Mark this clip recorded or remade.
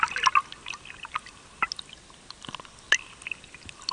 recorded